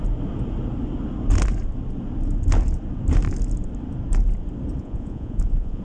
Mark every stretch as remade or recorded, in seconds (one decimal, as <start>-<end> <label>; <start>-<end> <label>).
0.0-4.8 recorded; 4.8-5.8 remade